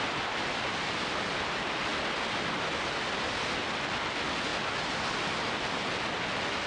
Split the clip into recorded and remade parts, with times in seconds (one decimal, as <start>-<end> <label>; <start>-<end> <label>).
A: 0.0-6.7 recorded